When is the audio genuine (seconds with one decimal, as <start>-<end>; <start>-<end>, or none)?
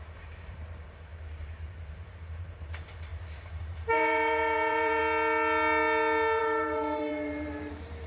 5.0-6.4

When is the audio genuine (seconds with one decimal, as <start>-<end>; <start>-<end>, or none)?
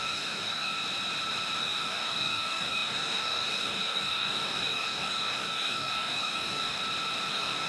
0.8-1.6; 6.8-7.3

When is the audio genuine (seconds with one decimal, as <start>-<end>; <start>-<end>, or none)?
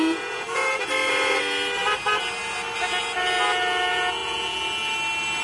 0.9-5.4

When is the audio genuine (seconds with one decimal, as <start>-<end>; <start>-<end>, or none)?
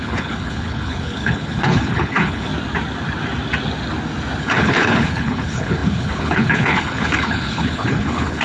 2.5-4.4